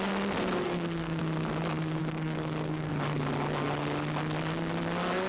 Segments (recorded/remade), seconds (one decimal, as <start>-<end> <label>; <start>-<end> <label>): 0.0-0.6 recorded; 0.6-1.2 remade; 1.2-2.0 recorded; 2.0-2.9 remade; 2.9-5.3 recorded